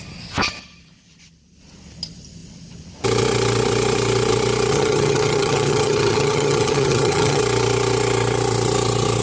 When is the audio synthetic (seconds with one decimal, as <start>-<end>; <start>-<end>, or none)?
4.7-7.4